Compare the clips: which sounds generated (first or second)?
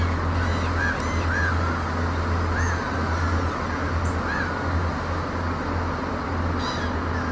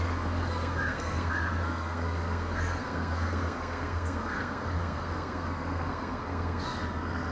second